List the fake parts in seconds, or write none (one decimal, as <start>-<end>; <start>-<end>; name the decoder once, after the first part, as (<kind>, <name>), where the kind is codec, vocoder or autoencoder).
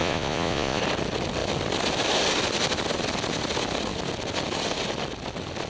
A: 0.0-0.8 (vocoder, Vocos)